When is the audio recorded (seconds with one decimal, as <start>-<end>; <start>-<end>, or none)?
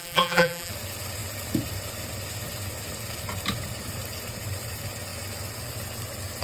0.7-6.4